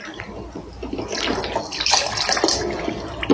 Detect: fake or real real